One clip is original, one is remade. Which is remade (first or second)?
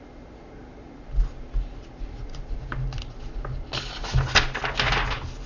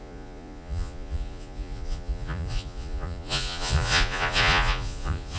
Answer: second